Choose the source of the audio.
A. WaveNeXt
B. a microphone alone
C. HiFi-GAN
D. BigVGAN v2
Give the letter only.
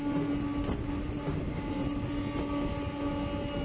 B